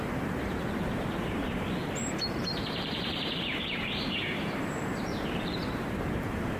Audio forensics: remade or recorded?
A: remade